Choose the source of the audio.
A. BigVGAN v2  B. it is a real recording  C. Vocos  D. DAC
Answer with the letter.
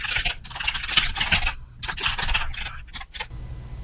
B